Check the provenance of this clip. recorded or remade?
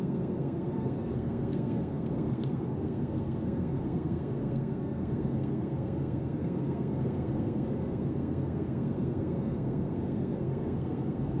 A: remade